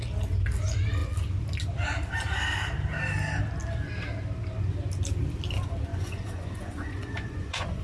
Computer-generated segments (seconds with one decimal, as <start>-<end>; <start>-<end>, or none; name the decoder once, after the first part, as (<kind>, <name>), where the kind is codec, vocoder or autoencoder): 5.9-7.8 (vocoder, Vocos)